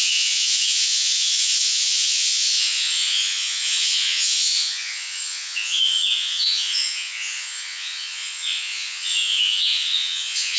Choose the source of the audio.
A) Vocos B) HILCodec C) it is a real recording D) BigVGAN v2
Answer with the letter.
A